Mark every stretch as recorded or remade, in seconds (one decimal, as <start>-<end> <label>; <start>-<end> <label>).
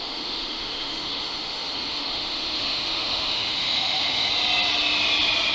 0.0-4.3 remade; 4.3-5.5 recorded